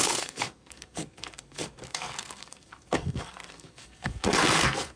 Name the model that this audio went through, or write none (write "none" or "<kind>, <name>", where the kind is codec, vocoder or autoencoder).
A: codec, SNAC